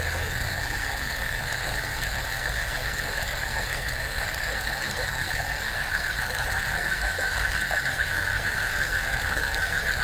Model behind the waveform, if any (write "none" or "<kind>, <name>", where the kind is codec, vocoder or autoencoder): codec, SNAC